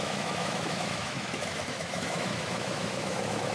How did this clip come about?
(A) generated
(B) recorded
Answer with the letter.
A